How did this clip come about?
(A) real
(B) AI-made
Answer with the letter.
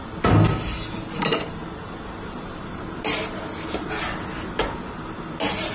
A